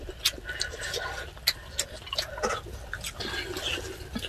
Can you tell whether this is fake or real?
real